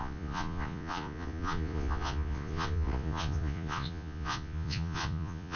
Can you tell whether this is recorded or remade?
remade